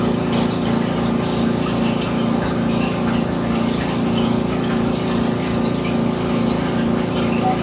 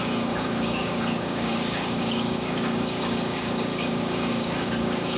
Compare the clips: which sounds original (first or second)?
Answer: first